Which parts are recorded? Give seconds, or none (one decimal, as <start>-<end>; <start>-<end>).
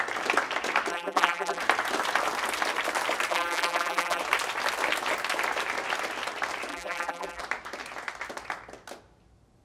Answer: 0.0-0.9; 1.6-3.3; 4.2-6.7; 7.4-9.6